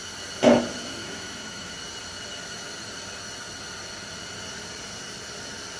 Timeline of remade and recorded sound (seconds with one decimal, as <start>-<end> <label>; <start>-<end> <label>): 0.0-1.0 recorded; 1.0-1.7 remade; 1.7-5.8 recorded